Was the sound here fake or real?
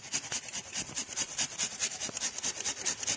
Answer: real